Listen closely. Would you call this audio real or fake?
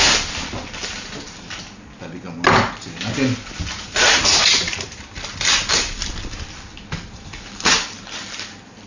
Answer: real